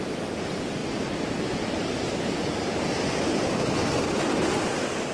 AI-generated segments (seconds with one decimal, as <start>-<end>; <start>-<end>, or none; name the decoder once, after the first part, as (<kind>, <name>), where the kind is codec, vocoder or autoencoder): 0.8-2.8 (vocoder, BigVGAN v2)